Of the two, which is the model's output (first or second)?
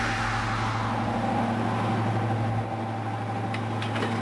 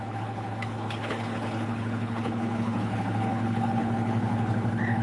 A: second